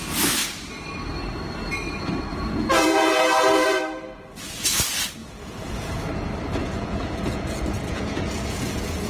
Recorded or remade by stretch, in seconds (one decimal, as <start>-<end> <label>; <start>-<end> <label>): 0.0-2.3 recorded; 2.3-3.8 remade; 3.8-5.2 recorded; 5.2-6.1 remade; 6.1-6.6 recorded; 6.6-9.1 remade